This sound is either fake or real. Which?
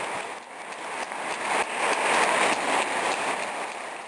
real